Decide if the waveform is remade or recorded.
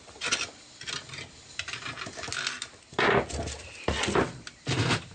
recorded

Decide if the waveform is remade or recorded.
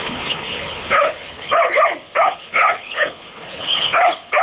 remade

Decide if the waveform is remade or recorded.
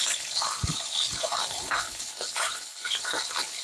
remade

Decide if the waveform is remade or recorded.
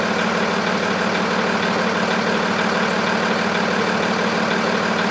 recorded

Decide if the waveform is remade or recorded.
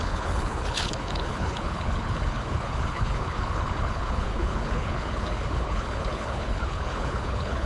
remade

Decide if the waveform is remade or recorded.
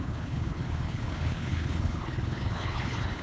remade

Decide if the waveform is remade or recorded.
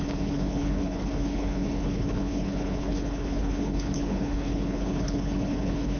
remade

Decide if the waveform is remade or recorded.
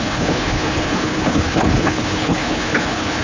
remade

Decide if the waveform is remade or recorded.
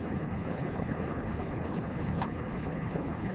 remade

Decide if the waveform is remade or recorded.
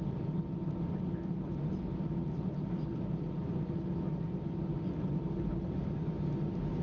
recorded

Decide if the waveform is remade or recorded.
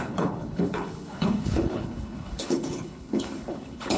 remade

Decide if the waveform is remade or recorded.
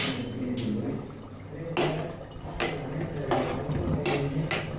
recorded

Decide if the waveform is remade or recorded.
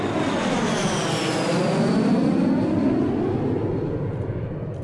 recorded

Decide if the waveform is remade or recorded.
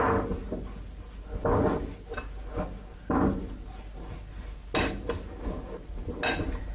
recorded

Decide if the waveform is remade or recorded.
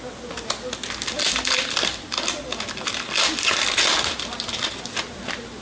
recorded